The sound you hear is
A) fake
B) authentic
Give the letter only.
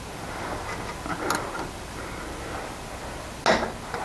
B